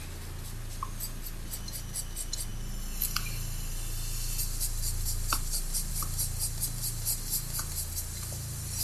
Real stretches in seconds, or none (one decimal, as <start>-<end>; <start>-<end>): 0.0-8.8